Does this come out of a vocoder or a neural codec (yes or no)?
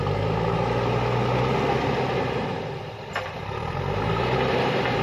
no